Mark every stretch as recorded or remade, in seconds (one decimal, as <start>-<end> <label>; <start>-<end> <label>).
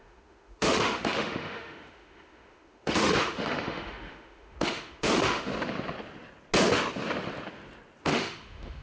0.0-5.5 remade; 5.5-8.0 recorded; 8.0-8.8 remade